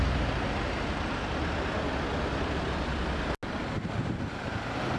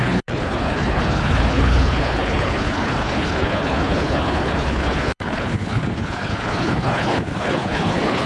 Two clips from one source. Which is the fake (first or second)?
second